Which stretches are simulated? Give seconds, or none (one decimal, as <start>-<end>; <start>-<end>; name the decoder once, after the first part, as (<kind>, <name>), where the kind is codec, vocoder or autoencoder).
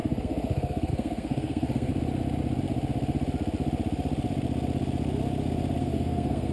0.0-1.9 (codec, SNAC); 5.8-6.5